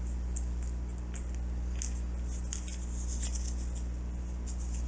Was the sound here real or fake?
real